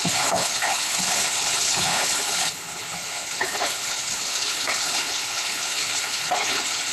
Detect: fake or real fake